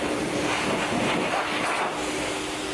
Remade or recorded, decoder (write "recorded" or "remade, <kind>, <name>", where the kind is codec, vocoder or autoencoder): recorded